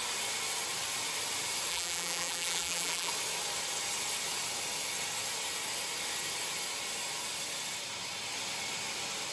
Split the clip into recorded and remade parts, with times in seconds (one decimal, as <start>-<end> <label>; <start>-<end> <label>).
0.0-1.7 recorded; 1.7-3.1 remade; 3.1-9.3 recorded